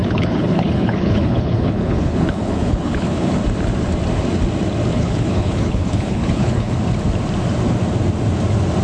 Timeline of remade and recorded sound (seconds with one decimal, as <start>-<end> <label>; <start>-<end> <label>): 0.0-3.4 remade; 3.4-4.9 recorded; 4.9-6.7 remade; 6.7-8.8 recorded